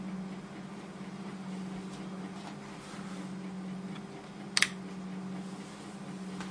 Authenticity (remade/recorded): recorded